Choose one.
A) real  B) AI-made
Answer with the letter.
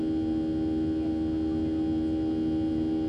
A